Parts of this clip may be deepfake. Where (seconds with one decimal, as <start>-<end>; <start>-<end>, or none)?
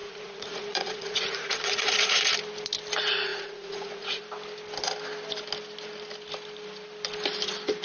0.0-2.2; 3.3-4.2